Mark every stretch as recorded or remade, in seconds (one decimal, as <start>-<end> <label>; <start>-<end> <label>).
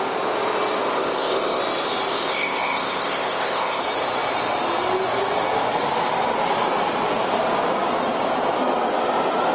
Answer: 0.0-0.8 recorded; 0.8-1.6 remade; 1.6-2.1 recorded; 2.1-3.8 remade; 3.8-9.5 recorded